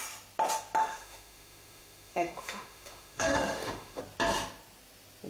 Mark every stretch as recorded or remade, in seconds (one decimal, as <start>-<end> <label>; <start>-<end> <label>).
0.0-0.8 recorded; 0.8-4.0 remade; 4.0-5.3 recorded